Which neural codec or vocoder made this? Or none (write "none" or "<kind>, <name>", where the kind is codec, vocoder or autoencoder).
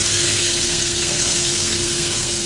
codec, SNAC